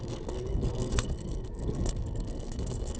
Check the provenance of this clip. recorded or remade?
remade